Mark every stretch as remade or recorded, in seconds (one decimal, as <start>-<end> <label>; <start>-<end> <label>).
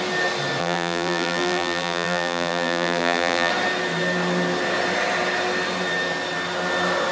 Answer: 0.0-0.6 recorded; 0.6-3.5 remade; 3.5-7.1 recorded